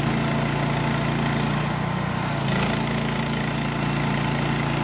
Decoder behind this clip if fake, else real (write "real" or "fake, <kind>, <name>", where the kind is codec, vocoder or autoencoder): real